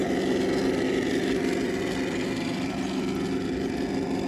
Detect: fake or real real